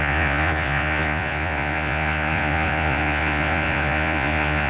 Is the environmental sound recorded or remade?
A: remade